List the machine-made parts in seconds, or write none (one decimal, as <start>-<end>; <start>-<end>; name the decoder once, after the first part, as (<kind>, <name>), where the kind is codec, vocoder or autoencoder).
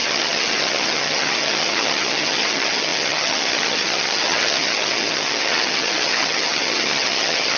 0.0-7.6 (vocoder, HiFi-GAN)